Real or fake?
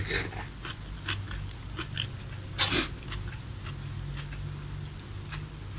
real